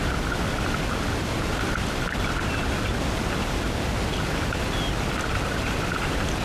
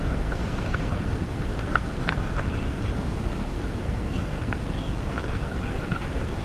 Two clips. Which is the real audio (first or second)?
first